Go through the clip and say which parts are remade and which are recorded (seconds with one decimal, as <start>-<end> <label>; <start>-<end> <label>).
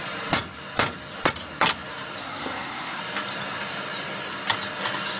0.0-2.2 recorded; 2.2-3.0 remade; 3.0-5.2 recorded